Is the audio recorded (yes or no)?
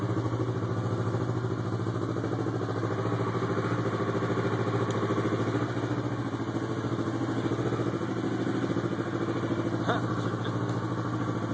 yes